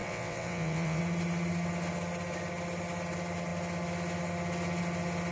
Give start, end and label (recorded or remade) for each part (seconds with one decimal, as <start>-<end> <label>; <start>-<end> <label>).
0.0-1.0 remade; 1.0-5.3 recorded